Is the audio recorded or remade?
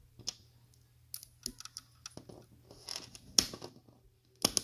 recorded